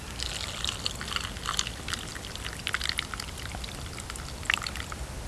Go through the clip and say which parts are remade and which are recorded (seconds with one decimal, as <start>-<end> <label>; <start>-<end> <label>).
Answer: 0.0-5.3 recorded